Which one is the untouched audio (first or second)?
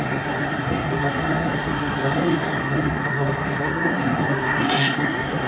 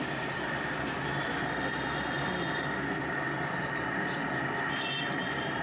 second